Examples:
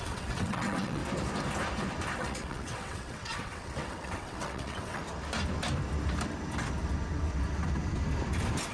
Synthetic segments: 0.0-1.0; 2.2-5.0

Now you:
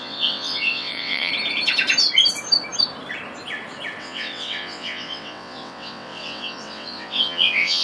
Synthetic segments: 0.0-1.3; 4.0-7.8

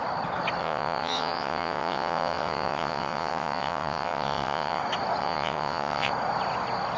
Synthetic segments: 0.6-4.8; 5.2-6.1

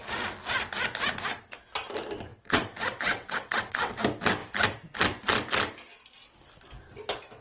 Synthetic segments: 2.3-3.9

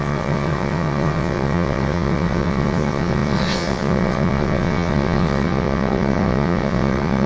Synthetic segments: 0.0-7.3